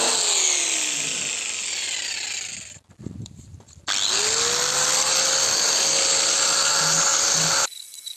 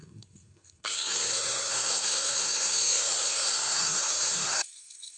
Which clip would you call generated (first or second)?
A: second